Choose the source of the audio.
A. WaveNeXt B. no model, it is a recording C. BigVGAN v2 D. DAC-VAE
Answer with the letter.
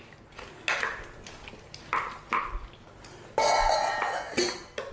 B